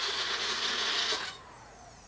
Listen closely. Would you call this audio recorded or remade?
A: remade